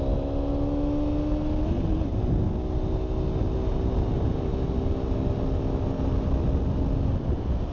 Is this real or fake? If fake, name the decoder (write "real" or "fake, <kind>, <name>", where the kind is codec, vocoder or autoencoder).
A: real